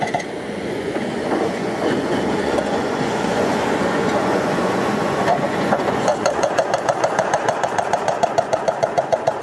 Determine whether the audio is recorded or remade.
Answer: remade